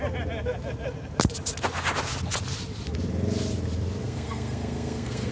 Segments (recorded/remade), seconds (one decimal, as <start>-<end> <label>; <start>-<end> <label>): 0.0-4.0 recorded; 4.0-5.3 remade